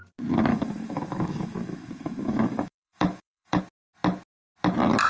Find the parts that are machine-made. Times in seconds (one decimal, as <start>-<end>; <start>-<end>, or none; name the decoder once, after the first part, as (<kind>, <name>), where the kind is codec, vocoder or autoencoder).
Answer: 0.5-3.6 (autoencoder, DAC-VAE)